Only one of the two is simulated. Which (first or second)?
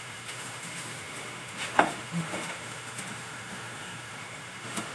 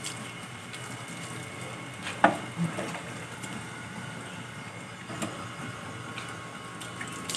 first